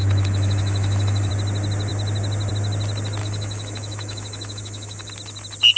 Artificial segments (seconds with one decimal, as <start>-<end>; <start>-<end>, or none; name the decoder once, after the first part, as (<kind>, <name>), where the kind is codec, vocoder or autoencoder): 0.0-1.3 (autoencoder, DAC-VAE); 3.2-5.1